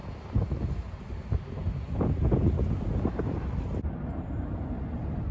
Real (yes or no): yes